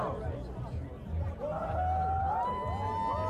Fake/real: real